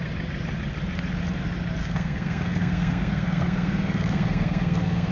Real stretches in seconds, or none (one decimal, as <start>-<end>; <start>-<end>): 0.0-1.8